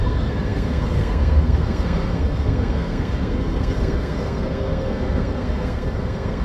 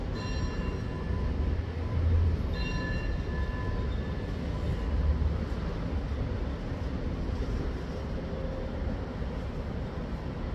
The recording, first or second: second